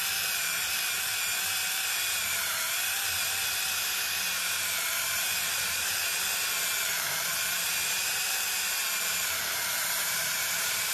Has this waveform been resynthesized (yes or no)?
yes